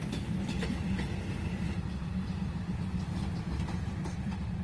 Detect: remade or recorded remade